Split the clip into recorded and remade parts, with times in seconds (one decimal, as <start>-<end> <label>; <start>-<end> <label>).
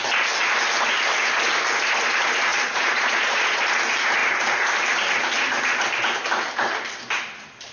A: 0.0-2.5 recorded; 2.5-3.6 remade; 3.6-7.7 recorded